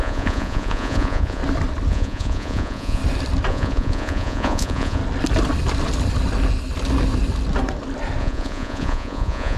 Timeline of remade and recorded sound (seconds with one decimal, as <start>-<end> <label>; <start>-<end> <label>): 0.0-1.4 remade; 1.4-1.9 recorded; 1.9-3.0 remade; 3.0-3.5 recorded; 3.5-5.0 remade; 5.0-8.2 recorded; 8.2-9.6 remade